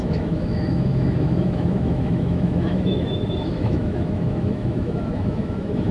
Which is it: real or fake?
fake